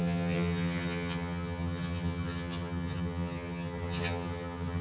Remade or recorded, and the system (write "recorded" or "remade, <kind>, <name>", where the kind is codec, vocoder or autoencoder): remade, vocoder, HiFi-GAN